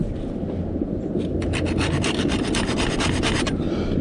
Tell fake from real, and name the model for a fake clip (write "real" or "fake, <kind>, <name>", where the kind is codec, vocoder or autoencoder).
real